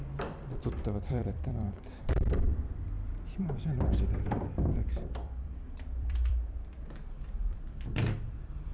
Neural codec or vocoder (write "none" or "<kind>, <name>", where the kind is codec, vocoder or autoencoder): vocoder, BigVGAN v2